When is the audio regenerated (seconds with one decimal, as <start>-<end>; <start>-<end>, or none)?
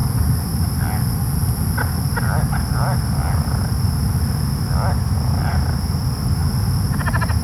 0.0-0.8